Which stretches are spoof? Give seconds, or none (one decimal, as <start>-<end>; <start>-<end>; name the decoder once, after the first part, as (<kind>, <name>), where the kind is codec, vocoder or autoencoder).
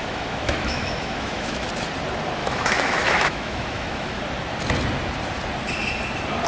0.0-1.7 (autoencoder, DAC-VAE); 2.4-4.2